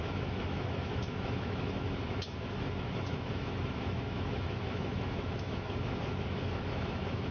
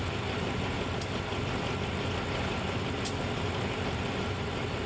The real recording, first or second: second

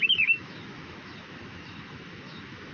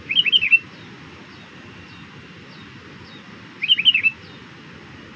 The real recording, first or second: second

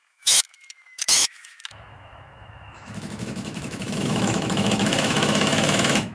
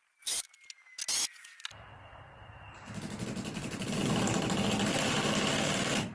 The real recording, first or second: second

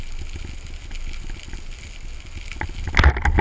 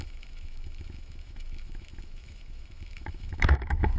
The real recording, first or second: first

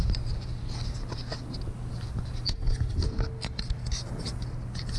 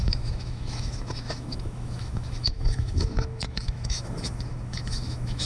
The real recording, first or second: first